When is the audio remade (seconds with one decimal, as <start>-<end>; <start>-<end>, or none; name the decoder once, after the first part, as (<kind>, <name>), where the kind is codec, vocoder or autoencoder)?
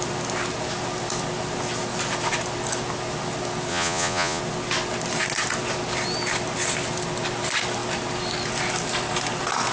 3.7-4.4 (vocoder, Vocos)